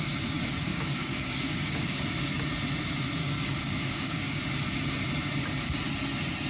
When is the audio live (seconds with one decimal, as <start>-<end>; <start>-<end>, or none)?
0.0-0.7; 2.0-3.2; 4.4-6.5